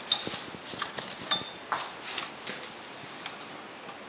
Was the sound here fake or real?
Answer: real